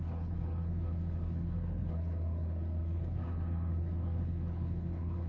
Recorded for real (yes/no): no